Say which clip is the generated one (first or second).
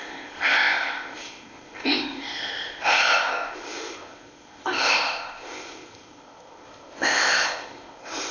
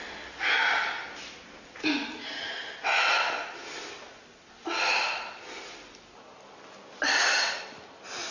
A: first